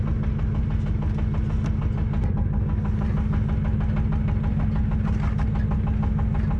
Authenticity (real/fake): real